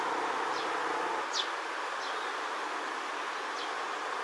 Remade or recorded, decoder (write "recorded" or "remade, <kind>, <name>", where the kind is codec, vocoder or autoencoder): recorded